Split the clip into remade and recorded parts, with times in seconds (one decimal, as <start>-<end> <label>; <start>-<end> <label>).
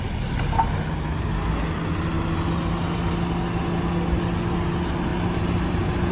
0.0-5.1 recorded; 5.1-6.1 remade